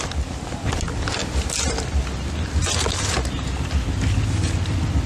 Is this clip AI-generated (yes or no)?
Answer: no